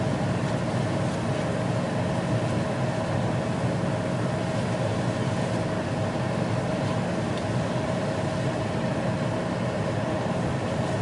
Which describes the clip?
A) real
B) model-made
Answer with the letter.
A